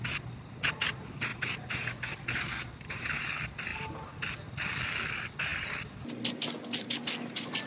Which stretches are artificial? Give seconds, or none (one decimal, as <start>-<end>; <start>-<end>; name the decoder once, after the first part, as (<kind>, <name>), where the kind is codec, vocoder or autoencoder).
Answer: none